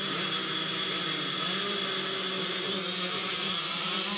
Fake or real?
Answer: real